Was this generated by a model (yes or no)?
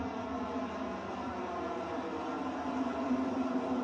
no